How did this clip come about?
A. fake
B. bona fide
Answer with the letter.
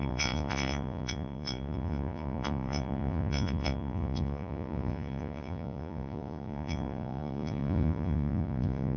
A